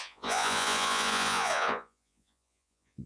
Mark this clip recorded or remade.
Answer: remade